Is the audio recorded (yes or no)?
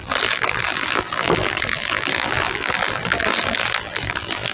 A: no